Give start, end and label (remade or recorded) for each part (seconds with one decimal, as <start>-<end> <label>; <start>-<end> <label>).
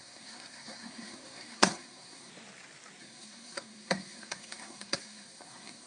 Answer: 0.0-2.3 remade; 2.3-3.0 recorded; 3.0-5.9 remade